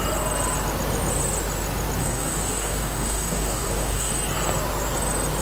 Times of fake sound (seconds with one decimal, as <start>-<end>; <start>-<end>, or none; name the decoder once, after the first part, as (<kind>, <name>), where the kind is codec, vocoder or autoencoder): 2.0-4.1 (codec, DAC)